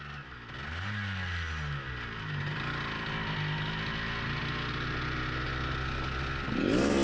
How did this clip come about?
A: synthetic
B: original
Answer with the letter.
B